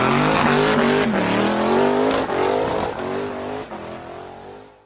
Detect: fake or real real